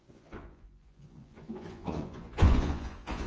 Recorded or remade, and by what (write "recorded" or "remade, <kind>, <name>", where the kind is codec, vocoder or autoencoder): remade, vocoder, Vocos